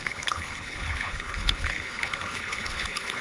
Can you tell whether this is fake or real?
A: fake